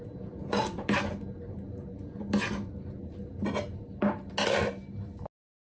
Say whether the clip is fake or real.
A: real